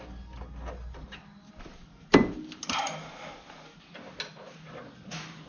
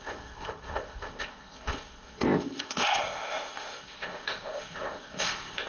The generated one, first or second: second